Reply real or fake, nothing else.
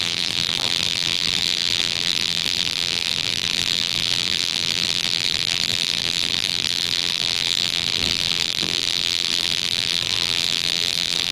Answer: fake